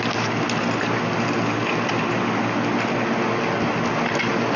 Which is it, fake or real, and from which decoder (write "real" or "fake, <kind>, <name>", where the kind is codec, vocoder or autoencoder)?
real